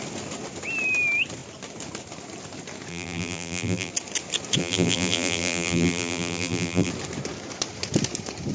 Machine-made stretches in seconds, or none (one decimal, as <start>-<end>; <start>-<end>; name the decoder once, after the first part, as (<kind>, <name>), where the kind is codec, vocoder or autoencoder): 2.9-3.9 (vocoder, BigVGAN v2); 4.6-6.9